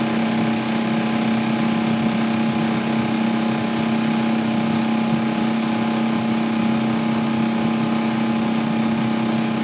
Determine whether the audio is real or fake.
real